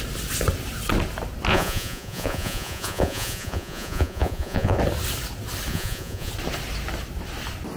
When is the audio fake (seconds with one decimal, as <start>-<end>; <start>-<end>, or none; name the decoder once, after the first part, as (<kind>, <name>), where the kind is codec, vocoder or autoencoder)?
1.5-4.8 (vocoder, Vocos); 5.7-6.3